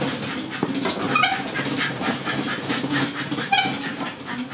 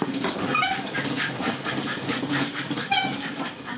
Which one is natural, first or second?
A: first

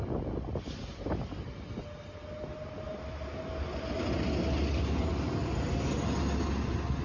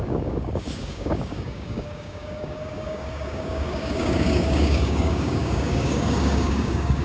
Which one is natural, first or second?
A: first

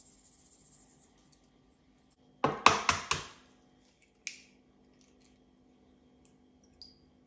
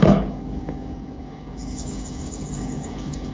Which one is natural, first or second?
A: first